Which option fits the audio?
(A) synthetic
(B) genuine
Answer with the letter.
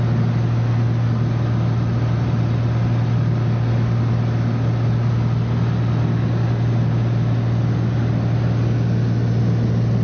B